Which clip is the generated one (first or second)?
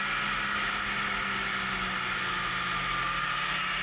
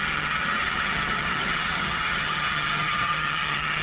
second